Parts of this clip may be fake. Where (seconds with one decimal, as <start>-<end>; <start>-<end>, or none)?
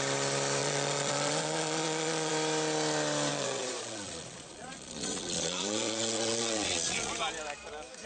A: 0.6-2.3; 3.3-7.1